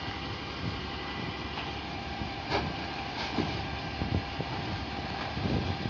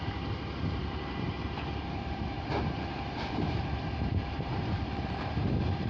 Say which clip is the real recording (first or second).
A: first